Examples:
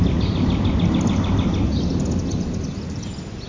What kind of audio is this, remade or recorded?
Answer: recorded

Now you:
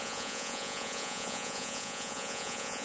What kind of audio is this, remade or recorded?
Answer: remade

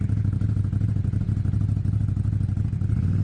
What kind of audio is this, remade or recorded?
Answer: recorded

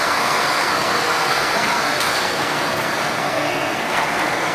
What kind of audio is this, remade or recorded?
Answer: remade